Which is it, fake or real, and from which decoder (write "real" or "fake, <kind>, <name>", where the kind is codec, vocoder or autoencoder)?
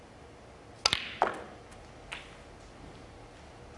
real